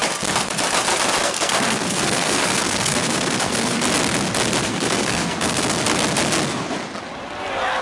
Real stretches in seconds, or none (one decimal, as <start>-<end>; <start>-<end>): 0.0-1.2; 3.8-4.6; 5.8-7.8